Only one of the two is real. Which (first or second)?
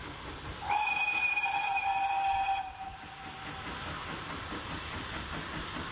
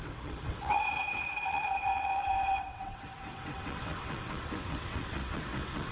first